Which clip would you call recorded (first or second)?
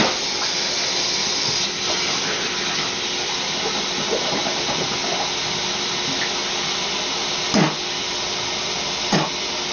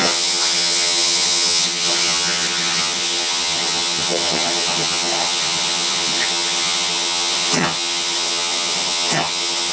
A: first